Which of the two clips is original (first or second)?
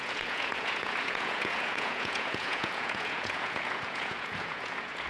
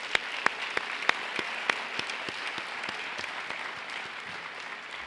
second